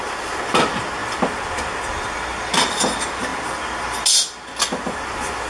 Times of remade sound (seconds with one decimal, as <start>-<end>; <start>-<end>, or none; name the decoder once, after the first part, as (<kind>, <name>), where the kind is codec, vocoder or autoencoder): none